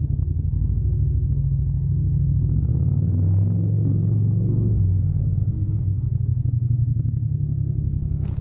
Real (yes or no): no